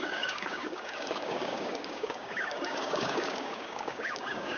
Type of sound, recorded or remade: remade